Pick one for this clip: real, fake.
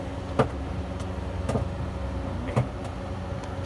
real